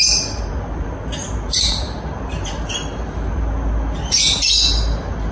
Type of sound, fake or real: real